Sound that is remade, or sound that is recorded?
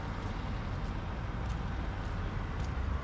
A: recorded